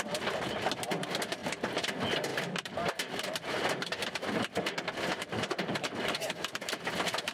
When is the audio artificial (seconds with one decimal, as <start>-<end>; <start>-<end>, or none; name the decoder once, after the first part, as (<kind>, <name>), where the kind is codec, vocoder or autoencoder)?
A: 1.4-1.9 (vocoder, BigVGAN v2); 2.3-6.7